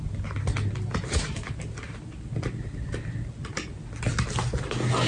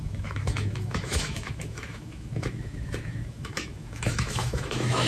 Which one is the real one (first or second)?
first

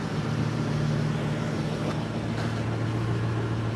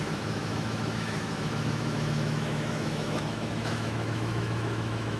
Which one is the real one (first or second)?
first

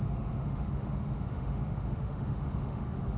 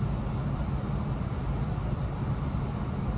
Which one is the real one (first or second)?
second